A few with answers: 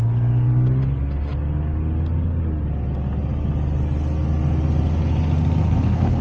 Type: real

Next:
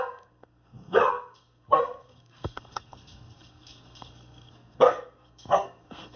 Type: fake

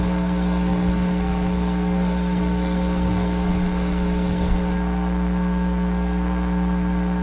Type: fake